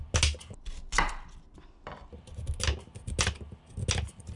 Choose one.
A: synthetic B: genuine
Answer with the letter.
B